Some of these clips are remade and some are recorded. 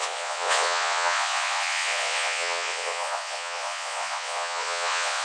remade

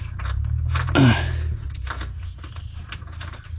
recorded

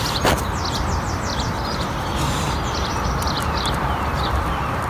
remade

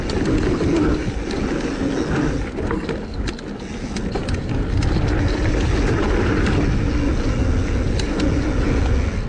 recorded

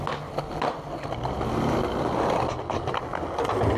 recorded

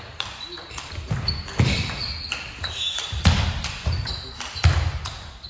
recorded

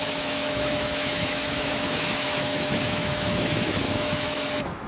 remade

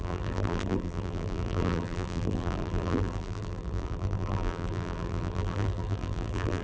remade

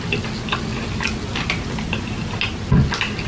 recorded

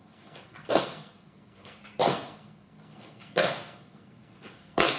remade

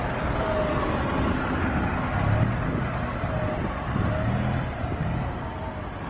recorded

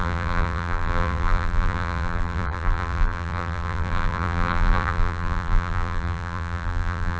remade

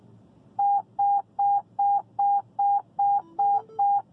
recorded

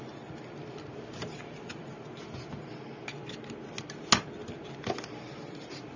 recorded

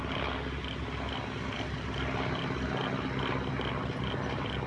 recorded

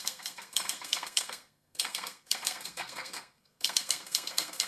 remade